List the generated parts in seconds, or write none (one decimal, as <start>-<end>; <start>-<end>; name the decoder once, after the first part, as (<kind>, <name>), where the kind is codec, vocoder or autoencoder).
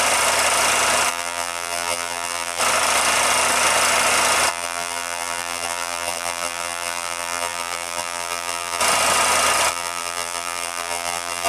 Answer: 1.1-2.6 (vocoder, BigVGAN v2); 4.5-8.8; 9.7-11.5